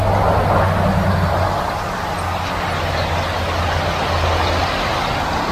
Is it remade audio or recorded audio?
recorded